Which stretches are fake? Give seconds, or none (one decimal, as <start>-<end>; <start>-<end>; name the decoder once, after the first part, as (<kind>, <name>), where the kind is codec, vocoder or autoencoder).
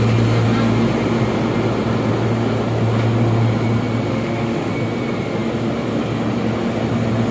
4.1-4.7 (autoencoder, DAC-VAE)